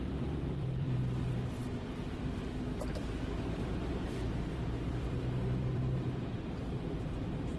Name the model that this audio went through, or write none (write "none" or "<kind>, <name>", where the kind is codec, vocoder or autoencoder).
vocoder, BigVGAN v2